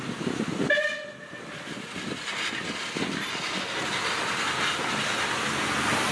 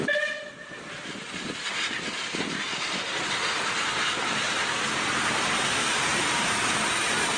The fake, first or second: second